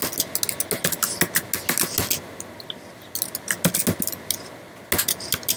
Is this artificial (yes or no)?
no